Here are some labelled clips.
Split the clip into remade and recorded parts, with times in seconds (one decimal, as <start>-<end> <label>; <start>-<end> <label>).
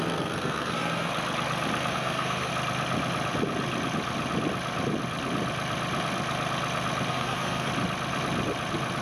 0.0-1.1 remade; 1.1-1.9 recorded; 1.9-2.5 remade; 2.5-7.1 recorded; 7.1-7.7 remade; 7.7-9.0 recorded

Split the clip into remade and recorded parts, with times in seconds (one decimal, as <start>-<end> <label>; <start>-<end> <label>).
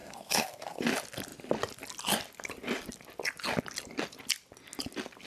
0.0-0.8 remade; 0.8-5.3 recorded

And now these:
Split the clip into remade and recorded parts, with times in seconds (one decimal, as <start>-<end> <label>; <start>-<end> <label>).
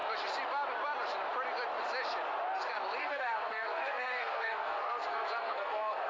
0.0-3.0 recorded; 3.0-6.1 remade